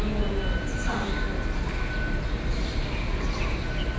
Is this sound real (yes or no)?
yes